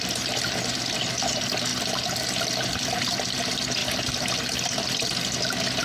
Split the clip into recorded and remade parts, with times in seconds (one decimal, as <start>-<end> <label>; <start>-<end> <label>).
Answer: 0.0-5.8 recorded